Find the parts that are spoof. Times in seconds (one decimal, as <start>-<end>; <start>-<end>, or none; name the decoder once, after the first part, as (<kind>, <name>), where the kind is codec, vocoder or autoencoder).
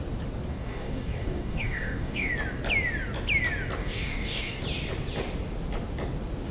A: 0.5-2.3 (codec, DAC); 3.8-4.6